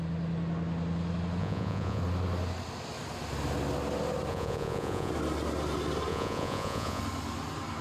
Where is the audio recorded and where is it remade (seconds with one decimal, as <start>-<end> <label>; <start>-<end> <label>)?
0.0-1.4 recorded; 1.4-2.0 remade; 2.0-4.3 recorded; 4.3-5.1 remade; 5.1-6.1 recorded; 6.1-7.0 remade; 7.0-7.8 recorded